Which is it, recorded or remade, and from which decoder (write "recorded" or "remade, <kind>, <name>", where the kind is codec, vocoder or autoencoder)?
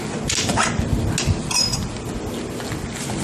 recorded